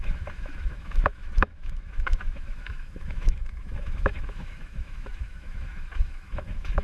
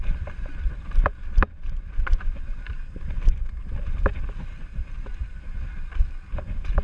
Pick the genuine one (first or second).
second